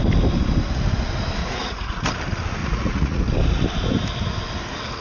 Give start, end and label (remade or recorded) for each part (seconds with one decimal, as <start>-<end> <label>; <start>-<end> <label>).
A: 0.0-1.4 recorded; 1.4-2.1 remade; 2.1-2.6 recorded; 2.6-3.2 remade; 3.2-5.0 recorded